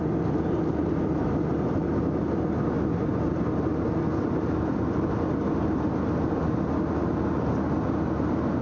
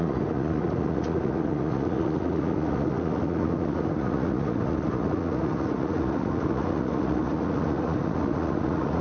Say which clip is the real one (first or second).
first